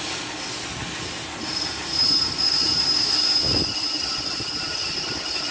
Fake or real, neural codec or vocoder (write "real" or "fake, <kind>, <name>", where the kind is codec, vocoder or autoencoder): real